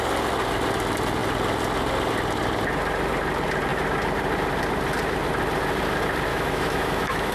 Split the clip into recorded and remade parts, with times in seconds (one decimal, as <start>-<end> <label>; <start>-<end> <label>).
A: 0.0-6.3 recorded; 6.3-7.3 remade